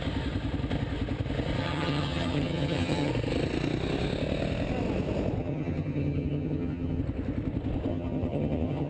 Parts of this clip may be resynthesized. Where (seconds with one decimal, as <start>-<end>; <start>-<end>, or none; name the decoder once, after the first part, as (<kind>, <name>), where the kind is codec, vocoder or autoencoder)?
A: 1.6-3.1 (vocoder, HiFi-GAN); 5.4-7.0; 7.9-8.9